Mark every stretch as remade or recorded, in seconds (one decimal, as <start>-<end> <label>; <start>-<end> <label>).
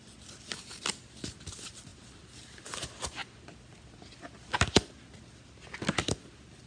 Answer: 0.0-6.7 recorded